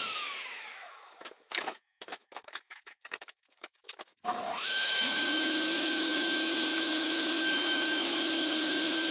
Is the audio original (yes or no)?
no